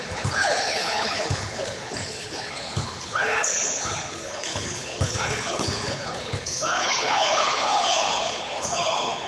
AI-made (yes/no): yes